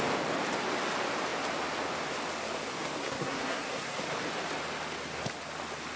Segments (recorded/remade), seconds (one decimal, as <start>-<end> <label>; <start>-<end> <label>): 0.0-3.0 recorded; 3.0-4.0 remade; 4.0-6.0 recorded